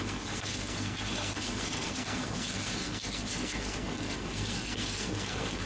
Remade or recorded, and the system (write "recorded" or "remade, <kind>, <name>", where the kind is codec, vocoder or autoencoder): remade, codec, SNAC